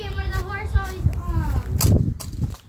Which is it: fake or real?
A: real